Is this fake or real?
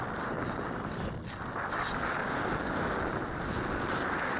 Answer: real